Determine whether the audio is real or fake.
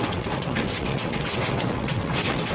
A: fake